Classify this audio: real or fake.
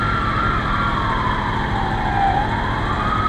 real